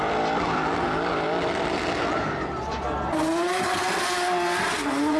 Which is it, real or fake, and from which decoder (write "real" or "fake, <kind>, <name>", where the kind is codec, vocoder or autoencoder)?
real